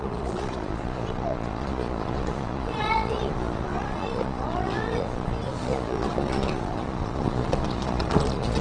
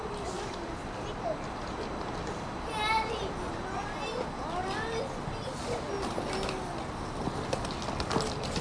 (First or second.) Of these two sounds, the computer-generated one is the first